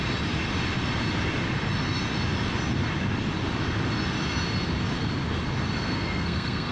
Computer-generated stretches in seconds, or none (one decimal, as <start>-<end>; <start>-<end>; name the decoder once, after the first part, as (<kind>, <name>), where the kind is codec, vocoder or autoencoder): 5.8-6.7 (codec, SNAC)